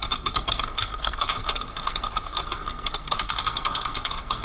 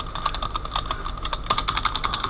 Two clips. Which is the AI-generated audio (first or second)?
first